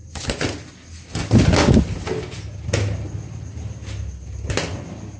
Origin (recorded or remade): recorded